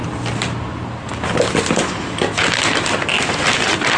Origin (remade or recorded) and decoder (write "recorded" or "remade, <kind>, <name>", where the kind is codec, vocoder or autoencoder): recorded